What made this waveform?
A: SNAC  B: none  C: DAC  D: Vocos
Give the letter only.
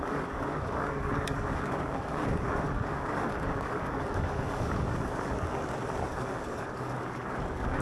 C